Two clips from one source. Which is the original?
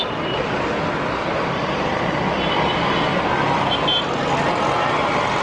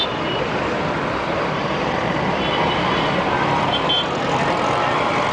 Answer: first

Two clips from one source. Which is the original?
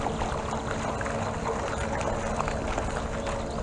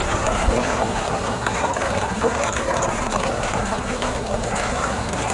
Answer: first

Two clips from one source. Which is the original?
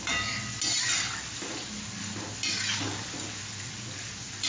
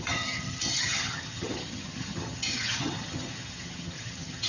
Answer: first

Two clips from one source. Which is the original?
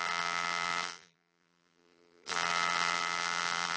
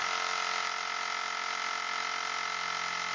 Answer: second